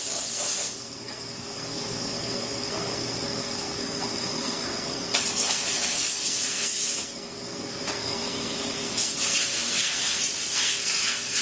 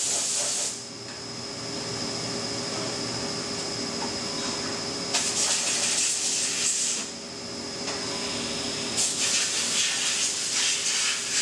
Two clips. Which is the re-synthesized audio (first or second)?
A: first